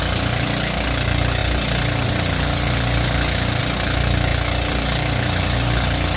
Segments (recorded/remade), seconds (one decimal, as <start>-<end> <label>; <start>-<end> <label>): 0.0-6.2 recorded